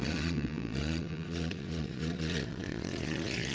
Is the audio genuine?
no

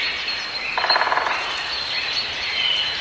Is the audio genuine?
yes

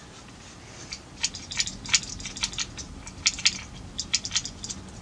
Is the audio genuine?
yes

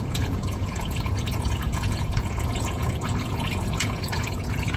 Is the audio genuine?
no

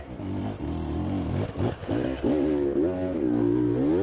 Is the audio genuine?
yes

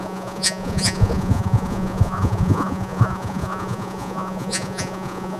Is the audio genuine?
no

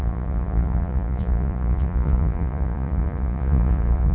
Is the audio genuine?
no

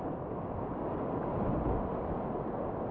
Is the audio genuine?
yes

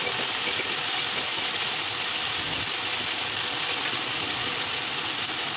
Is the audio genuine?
yes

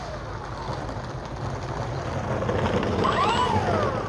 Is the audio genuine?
yes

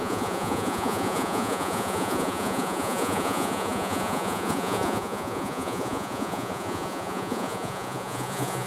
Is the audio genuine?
no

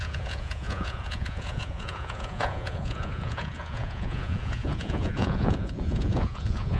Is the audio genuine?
no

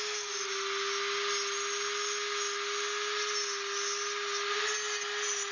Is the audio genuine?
yes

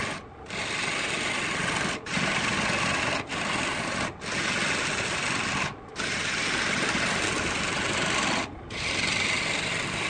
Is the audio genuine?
yes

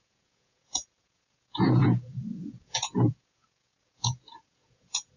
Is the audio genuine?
no